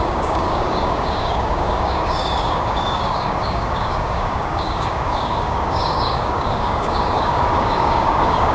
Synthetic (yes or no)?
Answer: yes